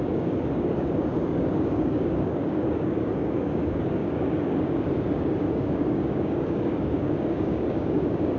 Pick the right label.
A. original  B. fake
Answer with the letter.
B